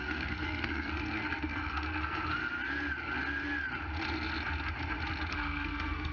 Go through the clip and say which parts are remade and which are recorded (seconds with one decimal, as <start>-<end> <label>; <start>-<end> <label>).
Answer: 0.0-2.4 remade; 2.4-5.3 recorded; 5.3-6.1 remade